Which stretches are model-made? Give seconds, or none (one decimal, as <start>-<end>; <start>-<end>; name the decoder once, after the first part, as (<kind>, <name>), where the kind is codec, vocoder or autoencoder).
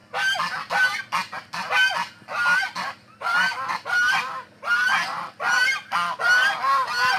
none